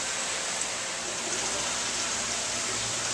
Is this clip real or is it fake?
real